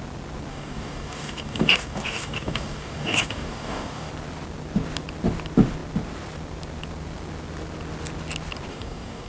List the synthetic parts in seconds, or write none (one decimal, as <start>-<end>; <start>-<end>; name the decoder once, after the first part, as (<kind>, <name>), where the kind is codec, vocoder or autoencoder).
0.5-4.1 (codec, DAC); 8.7-9.3